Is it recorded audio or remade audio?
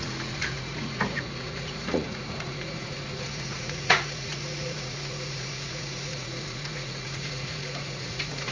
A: remade